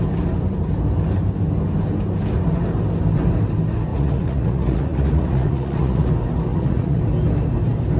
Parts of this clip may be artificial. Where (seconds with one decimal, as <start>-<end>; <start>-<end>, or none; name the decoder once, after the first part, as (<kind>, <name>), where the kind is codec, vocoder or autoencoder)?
3.9-6.1 (vocoder, Vocos); 6.5-7.0